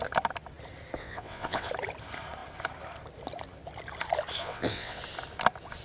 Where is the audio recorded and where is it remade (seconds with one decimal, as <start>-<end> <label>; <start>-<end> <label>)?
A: 0.0-1.0 recorded; 1.0-1.7 remade; 1.7-4.4 recorded; 4.4-5.0 remade; 5.0-5.8 recorded